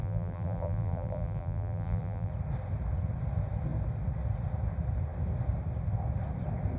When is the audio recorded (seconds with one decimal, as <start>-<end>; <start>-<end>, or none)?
2.3-6.8